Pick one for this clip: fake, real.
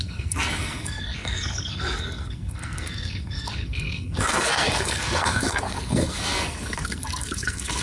fake